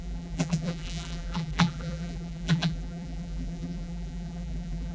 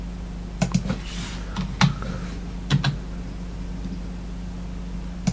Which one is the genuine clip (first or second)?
second